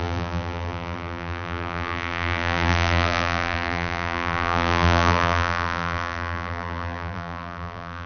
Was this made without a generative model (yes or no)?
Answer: no